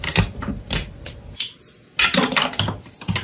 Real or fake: real